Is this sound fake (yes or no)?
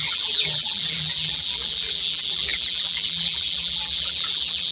yes